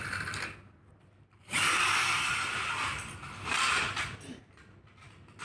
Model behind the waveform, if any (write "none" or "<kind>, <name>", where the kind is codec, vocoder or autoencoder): none